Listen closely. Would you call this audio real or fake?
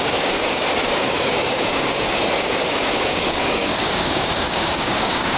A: fake